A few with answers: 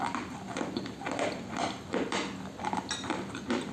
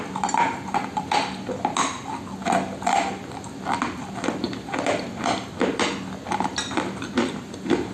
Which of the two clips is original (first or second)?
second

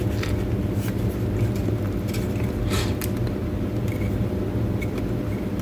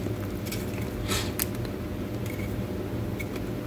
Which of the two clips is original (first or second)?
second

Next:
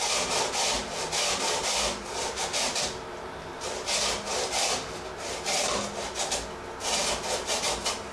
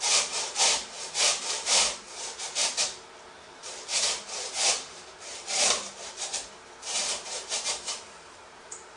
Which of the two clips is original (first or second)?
first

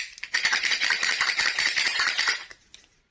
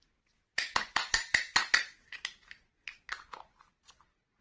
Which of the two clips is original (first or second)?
second